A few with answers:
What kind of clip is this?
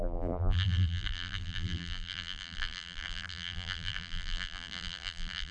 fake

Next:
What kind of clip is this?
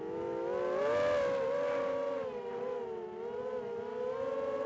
real